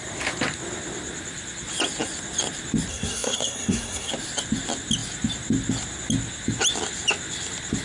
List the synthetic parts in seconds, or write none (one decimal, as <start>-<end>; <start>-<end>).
2.9-4.1